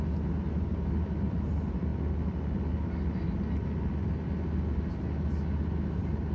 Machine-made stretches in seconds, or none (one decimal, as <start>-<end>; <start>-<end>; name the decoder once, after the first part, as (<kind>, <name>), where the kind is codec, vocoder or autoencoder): none